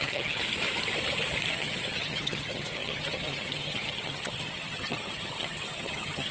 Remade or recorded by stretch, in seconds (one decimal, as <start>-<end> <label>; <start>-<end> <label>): 0.0-0.4 remade; 0.4-1.5 recorded; 1.5-6.3 remade